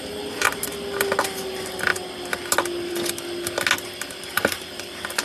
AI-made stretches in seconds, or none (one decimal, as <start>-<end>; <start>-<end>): 4.3-5.2